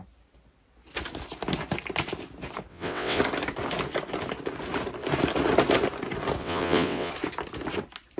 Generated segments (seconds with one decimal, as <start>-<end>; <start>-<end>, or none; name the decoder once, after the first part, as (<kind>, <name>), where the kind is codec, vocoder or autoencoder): 2.7-3.2 (vocoder, WaveNeXt); 6.4-7.1